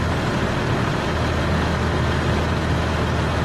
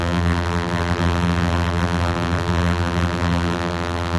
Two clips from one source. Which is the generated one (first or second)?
second